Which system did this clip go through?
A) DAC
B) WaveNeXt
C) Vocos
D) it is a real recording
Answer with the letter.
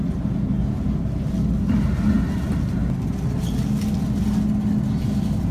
D